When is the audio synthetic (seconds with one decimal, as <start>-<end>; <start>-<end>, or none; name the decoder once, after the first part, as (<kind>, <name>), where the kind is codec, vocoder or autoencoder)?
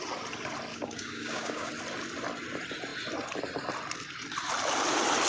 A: 0.7-1.7 (codec, DAC)